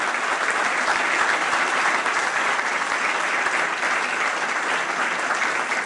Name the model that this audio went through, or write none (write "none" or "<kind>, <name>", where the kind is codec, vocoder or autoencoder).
none